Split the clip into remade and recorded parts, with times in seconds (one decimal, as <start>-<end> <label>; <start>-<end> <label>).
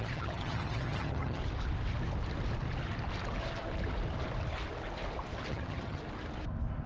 0.0-1.4 remade; 1.4-5.5 recorded; 5.5-6.0 remade; 6.0-6.9 recorded